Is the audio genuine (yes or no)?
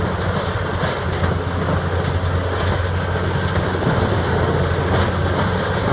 yes